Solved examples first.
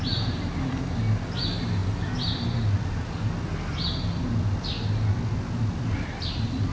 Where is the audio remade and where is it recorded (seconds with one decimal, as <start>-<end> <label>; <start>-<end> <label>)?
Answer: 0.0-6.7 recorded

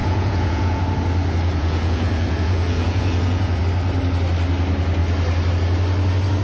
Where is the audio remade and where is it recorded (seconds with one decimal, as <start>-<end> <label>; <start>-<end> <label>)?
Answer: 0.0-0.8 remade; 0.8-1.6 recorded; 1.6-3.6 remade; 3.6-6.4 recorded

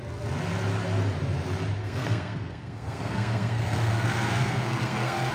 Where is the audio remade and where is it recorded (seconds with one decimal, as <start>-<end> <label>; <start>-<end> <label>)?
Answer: 0.0-1.8 recorded; 1.8-5.3 remade